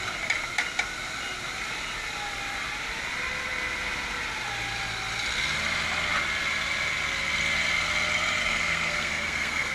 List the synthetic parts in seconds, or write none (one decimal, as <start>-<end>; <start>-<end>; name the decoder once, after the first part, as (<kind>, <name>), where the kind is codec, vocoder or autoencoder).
8.4-9.7 (codec, SNAC)